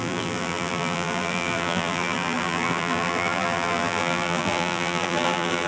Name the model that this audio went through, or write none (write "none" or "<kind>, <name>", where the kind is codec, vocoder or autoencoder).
vocoder, BigVGAN v2